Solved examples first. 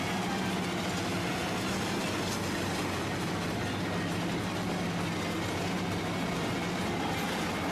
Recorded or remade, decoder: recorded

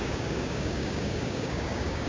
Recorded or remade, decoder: remade, codec, DAC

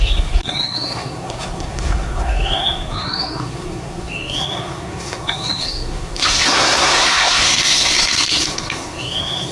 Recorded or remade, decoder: remade, codec, SNAC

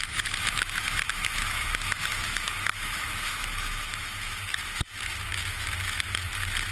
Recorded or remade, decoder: remade, autoencoder, DAC-VAE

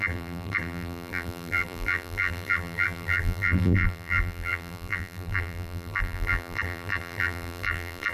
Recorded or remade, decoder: remade, vocoder, BigVGAN v2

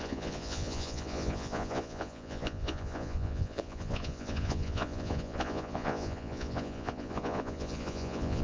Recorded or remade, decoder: remade, vocoder, Vocos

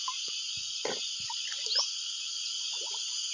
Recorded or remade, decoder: recorded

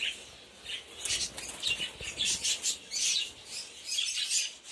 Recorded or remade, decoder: recorded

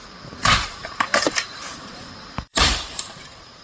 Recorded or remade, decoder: remade, vocoder, BigVGAN v2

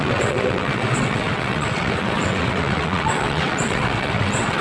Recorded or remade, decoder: remade, vocoder, WaveNeXt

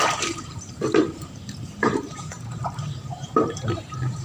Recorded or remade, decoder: remade, vocoder, BigVGAN v2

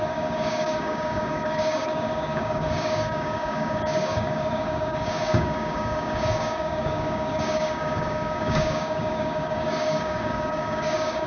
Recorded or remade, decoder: remade, codec, DAC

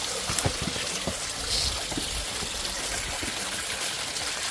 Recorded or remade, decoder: recorded